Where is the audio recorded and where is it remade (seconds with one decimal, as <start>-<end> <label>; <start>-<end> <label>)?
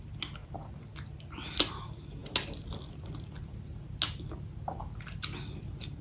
0.0-6.0 recorded